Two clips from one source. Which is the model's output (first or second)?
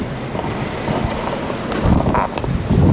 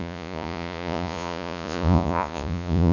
second